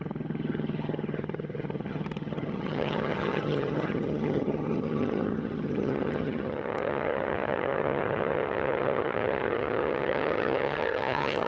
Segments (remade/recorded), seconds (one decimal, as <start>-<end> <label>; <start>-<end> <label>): 0.0-11.5 remade